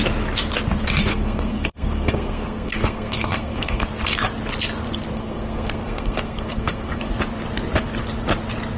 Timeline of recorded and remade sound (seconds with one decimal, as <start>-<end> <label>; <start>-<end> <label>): 0.0-1.1 recorded; 1.1-3.9 remade; 3.9-5.1 recorded; 5.1-7.1 remade; 7.1-8.8 recorded